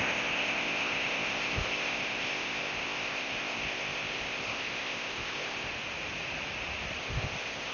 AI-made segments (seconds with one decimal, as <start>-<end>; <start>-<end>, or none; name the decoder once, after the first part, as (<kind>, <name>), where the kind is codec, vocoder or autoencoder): 0.0-5.7 (codec, ZipCodec); 7.0-7.7